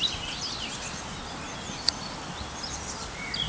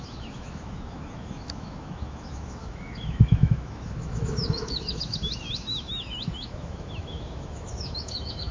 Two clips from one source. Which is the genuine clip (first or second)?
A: first